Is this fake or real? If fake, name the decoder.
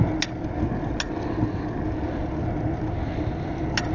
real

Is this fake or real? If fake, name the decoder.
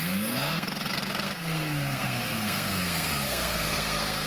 fake, codec, SNAC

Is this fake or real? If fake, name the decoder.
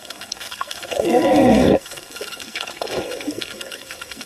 fake, codec, SNAC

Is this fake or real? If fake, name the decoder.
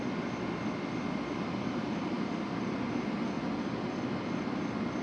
real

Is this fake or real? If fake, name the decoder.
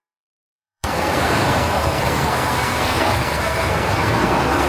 fake, codec, SNAC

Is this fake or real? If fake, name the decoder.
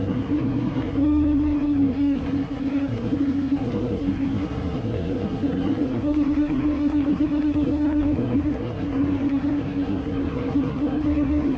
fake, codec, SNAC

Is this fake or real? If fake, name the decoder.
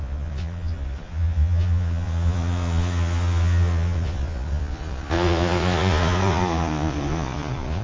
fake, vocoder, Vocos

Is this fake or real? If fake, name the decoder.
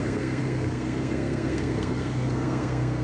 fake, codec, SNAC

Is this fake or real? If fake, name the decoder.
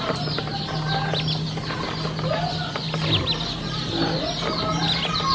real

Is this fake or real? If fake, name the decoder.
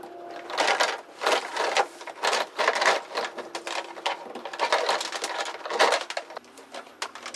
real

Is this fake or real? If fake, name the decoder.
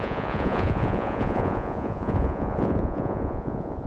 fake, vocoder, Vocos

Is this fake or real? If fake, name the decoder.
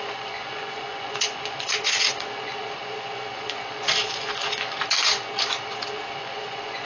fake, vocoder, Vocos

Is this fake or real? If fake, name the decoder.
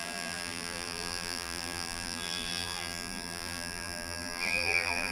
fake, vocoder, BigVGAN v2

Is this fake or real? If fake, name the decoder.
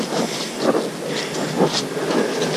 real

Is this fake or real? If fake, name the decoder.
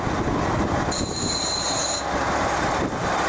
real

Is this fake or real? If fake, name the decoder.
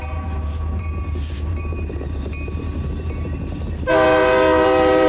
fake, vocoder, BigVGAN v2